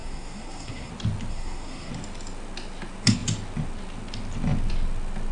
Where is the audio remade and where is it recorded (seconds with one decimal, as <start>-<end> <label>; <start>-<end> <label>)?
0.0-0.9 remade; 0.9-1.3 recorded; 1.3-1.9 remade; 1.9-5.3 recorded